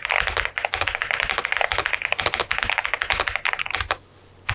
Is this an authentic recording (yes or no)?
yes